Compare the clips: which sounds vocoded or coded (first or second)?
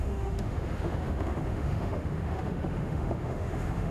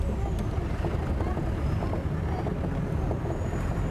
first